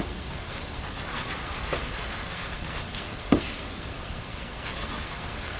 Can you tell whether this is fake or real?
fake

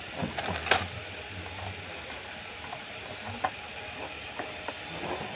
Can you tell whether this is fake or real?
real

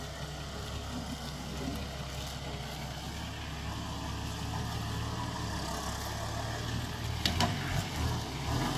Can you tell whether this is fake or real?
real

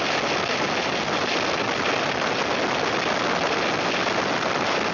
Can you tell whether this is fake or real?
real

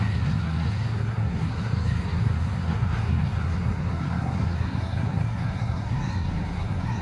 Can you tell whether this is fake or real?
fake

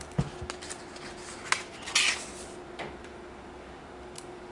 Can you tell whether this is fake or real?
real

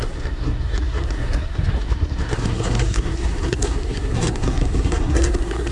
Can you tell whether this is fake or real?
fake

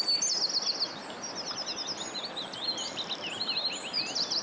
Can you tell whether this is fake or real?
real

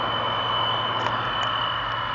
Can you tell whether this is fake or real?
real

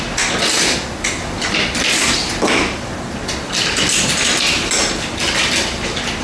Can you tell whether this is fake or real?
real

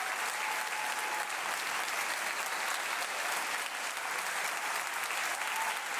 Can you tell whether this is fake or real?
real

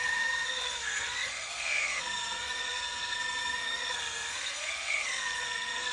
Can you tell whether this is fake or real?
fake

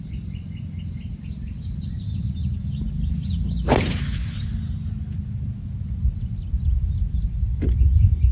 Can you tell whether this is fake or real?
real